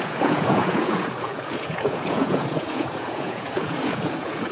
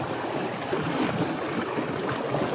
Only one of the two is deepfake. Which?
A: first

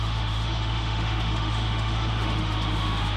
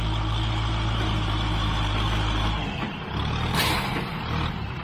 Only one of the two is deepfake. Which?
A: first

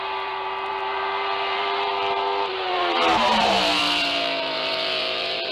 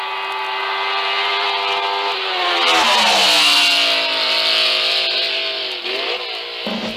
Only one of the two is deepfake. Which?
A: first